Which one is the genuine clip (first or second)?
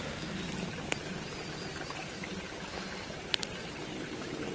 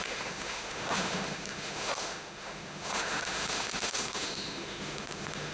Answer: first